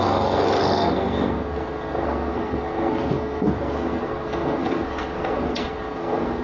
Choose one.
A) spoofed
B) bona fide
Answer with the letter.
A